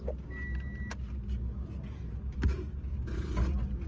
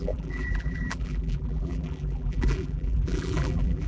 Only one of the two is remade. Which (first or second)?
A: second